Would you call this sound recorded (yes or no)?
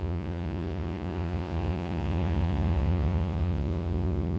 no